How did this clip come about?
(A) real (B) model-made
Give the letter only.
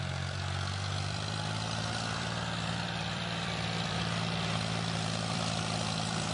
B